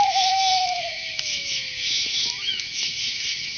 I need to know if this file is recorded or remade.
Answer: remade